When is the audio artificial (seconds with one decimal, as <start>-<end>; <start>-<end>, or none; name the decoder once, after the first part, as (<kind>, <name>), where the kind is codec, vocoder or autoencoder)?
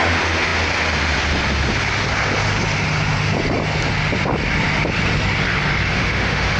5.9-6.6 (autoencoder, DAC-VAE)